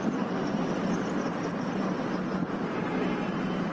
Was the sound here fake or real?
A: real